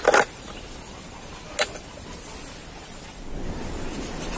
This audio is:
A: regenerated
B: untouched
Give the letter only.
B